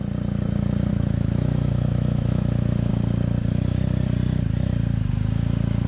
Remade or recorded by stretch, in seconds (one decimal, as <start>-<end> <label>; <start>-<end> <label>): 0.0-0.9 recorded; 0.9-2.9 remade; 2.9-5.9 recorded